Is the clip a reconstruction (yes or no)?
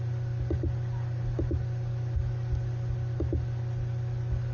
no